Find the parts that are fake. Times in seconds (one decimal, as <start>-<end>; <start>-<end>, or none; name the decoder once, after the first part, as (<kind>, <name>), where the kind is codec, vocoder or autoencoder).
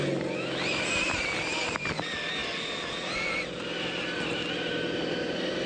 none